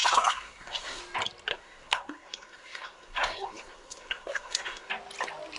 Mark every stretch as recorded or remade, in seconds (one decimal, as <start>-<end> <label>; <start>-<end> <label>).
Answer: 0.0-1.0 remade; 1.0-1.5 recorded; 1.5-4.9 remade; 4.9-5.6 recorded